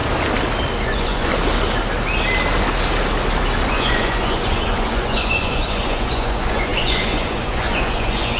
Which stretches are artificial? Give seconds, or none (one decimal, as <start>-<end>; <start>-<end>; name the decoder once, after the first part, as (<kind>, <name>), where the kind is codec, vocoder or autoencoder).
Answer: 0.8-1.3 (vocoder, Vocos); 3.7-8.4